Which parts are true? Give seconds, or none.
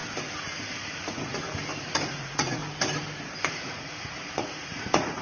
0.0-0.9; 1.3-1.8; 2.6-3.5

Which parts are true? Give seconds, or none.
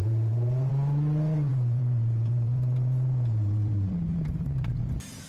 0.7-1.5; 4.7-5.3